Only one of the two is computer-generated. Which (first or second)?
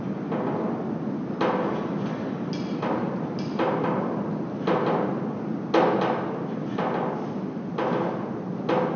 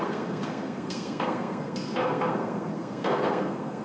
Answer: second